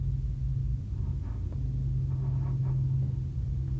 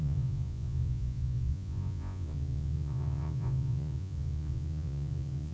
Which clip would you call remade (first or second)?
second